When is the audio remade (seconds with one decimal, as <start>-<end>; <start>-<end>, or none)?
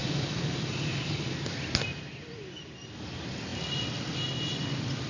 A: none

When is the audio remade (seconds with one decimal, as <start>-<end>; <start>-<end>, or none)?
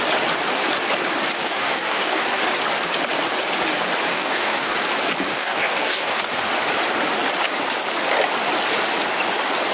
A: 1.4-2.4; 4.1-4.8; 5.3-6.2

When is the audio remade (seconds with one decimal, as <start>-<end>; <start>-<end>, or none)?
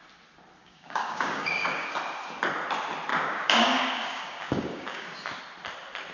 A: 0.6-1.9; 3.1-5.4